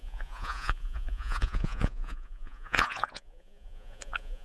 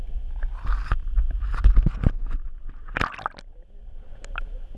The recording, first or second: second